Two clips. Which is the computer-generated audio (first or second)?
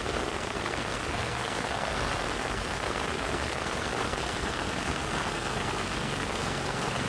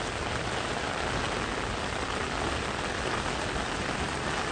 first